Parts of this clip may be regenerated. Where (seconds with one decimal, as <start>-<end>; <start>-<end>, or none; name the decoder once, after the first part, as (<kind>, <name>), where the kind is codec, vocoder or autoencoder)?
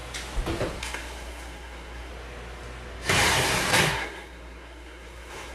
0.8-2.1 (codec, SNAC); 3.8-5.5